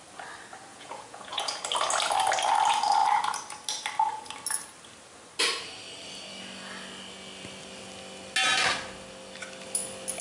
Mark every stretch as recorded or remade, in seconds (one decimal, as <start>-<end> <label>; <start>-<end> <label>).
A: 0.0-0.7 recorded; 0.7-1.6 remade; 1.6-10.2 recorded